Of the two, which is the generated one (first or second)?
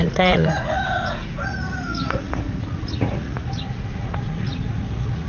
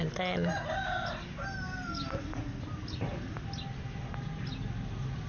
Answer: first